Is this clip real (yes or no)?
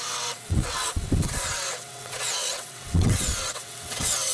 no